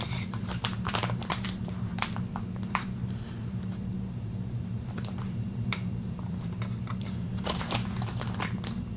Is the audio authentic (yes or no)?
no